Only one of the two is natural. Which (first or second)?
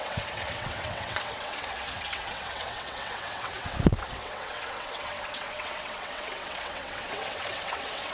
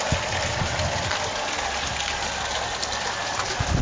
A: second